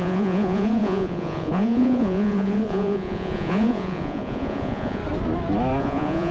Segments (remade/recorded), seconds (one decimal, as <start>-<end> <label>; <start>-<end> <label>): 0.0-5.0 remade; 5.0-5.8 recorded; 5.8-6.3 remade